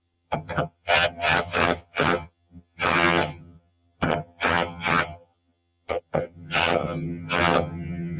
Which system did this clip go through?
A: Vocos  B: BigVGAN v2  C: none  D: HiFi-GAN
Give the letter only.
D